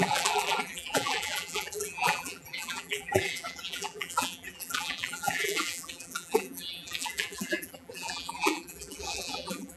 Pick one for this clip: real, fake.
fake